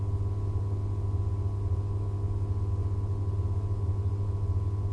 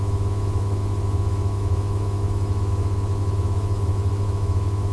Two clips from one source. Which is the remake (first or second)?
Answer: second